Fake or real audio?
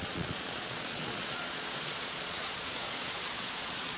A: fake